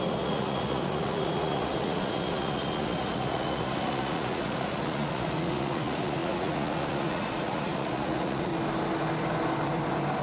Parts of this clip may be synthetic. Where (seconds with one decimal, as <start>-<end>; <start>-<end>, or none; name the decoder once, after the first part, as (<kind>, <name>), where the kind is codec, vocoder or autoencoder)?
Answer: 0.0-8.5 (vocoder, Vocos)